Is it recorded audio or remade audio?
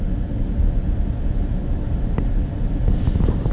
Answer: recorded